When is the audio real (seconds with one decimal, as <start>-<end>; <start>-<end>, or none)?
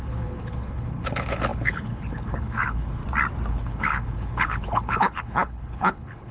3.0-3.5